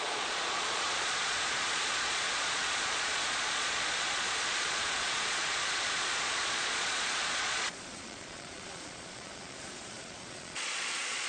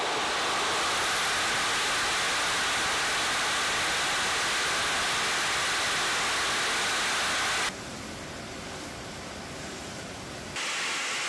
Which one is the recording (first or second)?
second